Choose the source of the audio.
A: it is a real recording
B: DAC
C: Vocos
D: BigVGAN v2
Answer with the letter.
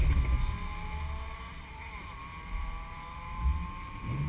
A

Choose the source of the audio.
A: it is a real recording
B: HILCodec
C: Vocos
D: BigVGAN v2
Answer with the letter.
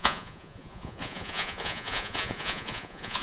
C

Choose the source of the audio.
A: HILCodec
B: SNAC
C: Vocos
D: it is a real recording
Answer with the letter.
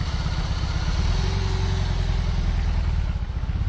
D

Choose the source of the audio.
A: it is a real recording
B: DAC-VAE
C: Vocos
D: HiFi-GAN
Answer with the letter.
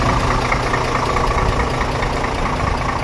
A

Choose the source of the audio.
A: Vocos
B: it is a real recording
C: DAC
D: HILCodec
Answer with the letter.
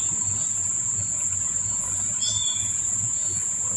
A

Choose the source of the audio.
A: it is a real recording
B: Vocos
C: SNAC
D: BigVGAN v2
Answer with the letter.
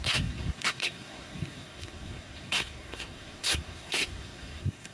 C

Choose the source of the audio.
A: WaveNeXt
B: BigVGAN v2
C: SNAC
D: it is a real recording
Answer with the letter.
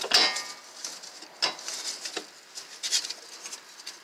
D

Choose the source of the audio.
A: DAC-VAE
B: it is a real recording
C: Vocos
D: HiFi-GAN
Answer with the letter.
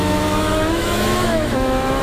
A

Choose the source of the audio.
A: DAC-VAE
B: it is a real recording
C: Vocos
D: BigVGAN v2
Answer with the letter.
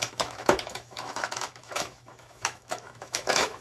A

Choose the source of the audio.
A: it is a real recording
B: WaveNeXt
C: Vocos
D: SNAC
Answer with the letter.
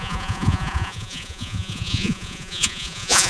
C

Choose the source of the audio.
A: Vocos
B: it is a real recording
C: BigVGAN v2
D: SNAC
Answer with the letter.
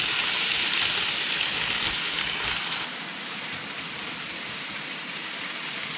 B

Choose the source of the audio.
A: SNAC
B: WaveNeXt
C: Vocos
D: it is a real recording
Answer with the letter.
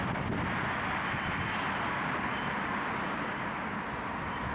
D